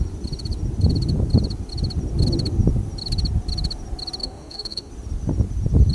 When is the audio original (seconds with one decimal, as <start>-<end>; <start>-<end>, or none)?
0.0-4.2; 4.9-5.9